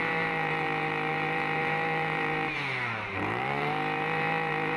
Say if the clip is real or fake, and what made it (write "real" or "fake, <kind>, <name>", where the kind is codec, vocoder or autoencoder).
fake, vocoder, BigVGAN v2